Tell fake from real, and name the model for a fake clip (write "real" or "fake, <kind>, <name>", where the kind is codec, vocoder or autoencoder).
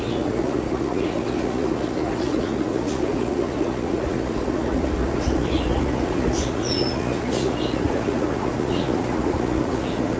fake, vocoder, Vocos